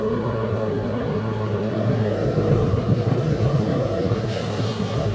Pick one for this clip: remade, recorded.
remade